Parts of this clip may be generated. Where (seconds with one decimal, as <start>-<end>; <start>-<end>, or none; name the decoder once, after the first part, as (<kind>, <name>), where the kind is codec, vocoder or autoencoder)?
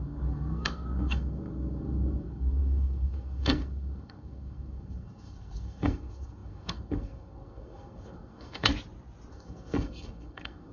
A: 0.0-8.7 (codec, SNAC); 9.3-10.7